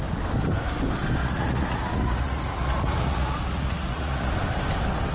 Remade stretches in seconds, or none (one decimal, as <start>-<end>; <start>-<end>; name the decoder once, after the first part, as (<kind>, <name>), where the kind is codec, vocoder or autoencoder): 1.2-4.3 (vocoder, Vocos)